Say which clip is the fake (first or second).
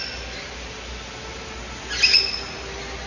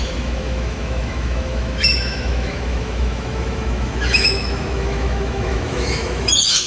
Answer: second